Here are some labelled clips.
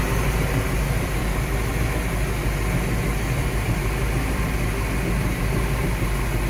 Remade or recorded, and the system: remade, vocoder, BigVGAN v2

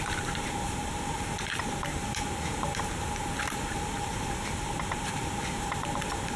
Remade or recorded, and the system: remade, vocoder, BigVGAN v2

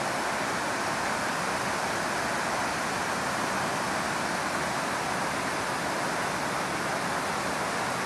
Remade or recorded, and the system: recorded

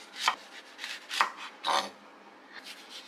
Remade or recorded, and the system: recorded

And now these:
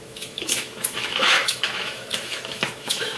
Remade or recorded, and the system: remade, autoencoder, DAC-VAE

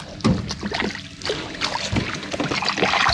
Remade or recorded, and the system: recorded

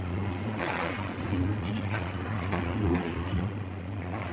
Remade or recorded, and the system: remade, vocoder, Vocos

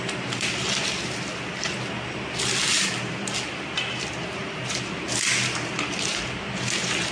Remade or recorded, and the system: recorded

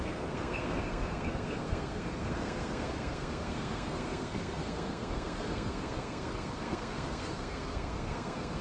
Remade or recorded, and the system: remade, codec, SNAC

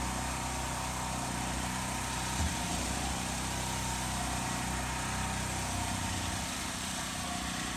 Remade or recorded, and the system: recorded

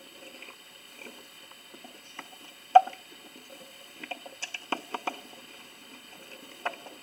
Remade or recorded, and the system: recorded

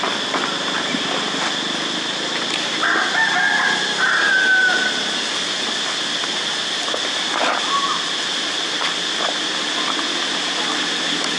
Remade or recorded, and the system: recorded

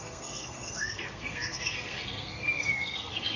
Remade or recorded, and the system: remade, codec, SNAC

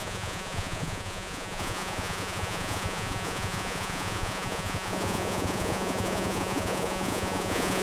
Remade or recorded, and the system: remade, vocoder, Vocos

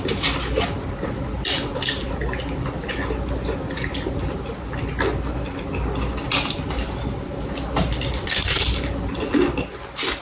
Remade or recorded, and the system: recorded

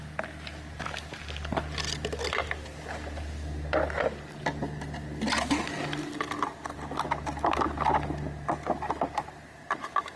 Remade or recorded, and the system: recorded